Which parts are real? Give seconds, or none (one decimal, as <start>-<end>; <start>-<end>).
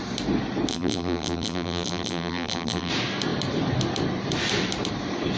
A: 0.0-0.7; 2.9-5.4